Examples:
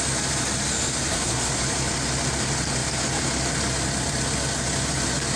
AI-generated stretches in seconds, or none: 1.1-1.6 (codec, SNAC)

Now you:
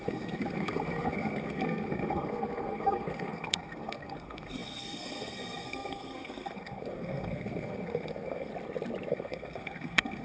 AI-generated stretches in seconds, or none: 0.0-8.5 (codec, SNAC); 9.1-10.2